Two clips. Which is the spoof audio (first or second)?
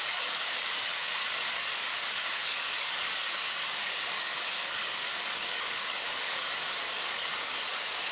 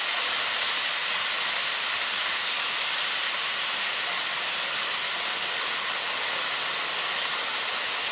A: first